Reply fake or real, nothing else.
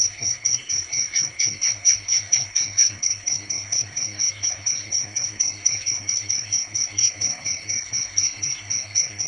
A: fake